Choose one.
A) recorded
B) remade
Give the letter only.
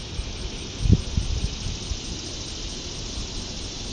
A